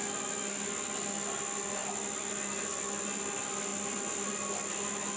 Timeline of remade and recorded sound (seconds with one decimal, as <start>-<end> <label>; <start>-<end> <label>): 0.0-5.2 recorded